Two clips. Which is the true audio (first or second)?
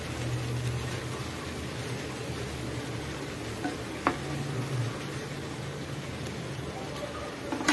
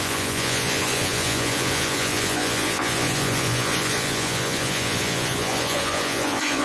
first